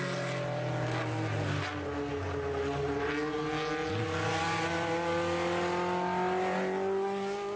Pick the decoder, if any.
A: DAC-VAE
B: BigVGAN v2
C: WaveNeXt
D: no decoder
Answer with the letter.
D